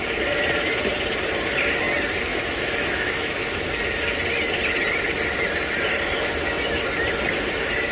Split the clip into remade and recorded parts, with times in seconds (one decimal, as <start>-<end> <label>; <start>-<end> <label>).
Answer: 0.0-2.3 recorded; 2.3-3.7 remade; 3.7-7.9 recorded